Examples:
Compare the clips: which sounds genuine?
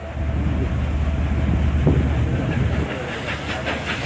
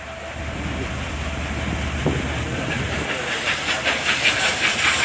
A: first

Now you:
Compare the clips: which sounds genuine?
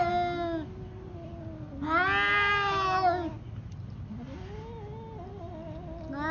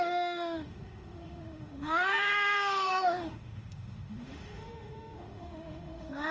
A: first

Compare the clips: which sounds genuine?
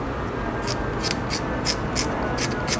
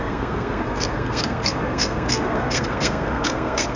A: first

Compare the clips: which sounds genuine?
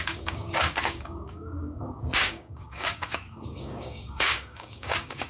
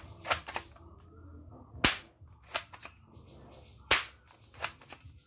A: second